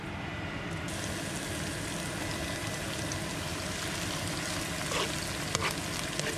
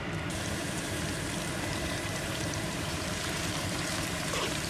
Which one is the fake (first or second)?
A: second